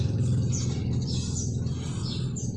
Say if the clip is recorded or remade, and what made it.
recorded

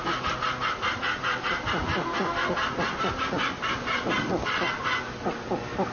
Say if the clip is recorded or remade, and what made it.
recorded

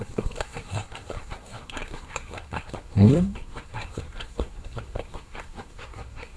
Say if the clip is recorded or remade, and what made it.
remade, codec, SNAC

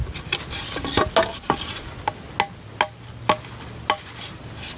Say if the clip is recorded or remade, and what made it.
recorded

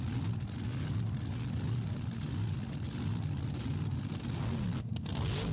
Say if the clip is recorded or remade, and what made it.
recorded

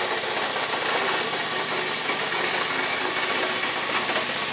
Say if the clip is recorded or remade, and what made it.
recorded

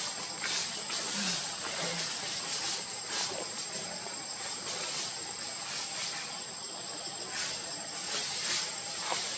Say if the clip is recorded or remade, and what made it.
recorded